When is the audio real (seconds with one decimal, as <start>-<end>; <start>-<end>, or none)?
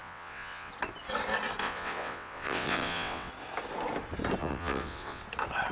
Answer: 0.7-1.6; 3.3-4.4; 5.2-5.7